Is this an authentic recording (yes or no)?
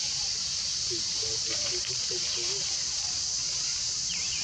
yes